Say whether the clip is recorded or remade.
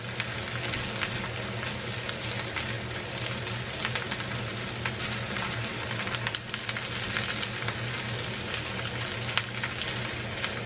recorded